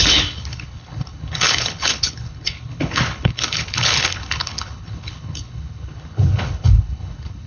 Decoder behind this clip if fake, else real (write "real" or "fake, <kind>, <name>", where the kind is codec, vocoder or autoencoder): fake, codec, HILCodec